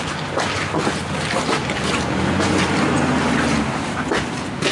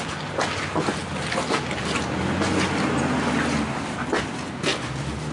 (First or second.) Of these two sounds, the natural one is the second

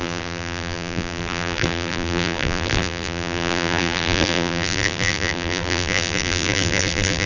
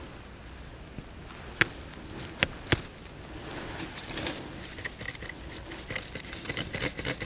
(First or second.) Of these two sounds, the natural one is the second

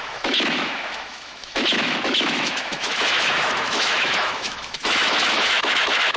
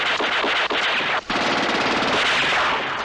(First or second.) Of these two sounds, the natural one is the second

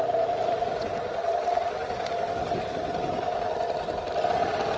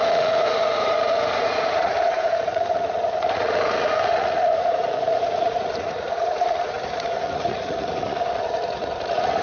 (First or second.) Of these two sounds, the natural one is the first